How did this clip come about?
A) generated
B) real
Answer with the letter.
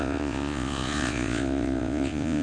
A